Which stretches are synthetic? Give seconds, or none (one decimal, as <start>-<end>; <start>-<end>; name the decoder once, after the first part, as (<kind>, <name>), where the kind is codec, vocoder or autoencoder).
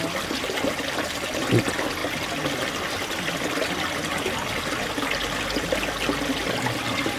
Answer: none